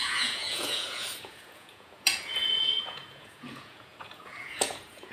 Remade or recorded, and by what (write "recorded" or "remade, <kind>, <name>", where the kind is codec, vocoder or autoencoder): remade, vocoder, Vocos